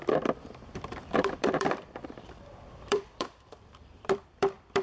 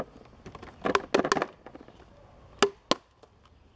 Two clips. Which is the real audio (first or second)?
second